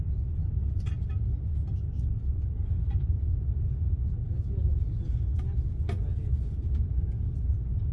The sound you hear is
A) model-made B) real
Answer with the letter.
B